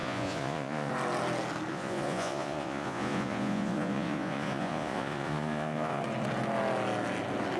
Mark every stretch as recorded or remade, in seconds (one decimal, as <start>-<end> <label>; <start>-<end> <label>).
0.0-0.9 remade; 0.9-1.7 recorded; 1.7-6.0 remade; 6.0-7.6 recorded